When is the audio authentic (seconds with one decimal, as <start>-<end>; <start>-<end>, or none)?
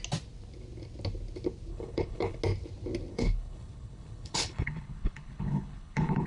0.0-1.7; 2.4-3.1